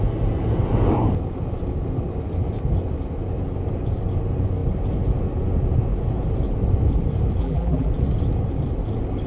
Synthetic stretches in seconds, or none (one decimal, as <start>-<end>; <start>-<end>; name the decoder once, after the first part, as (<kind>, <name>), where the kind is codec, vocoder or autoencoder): 7.4-7.9 (vocoder, BigVGAN v2)